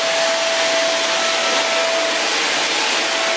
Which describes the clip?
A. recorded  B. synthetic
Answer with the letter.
A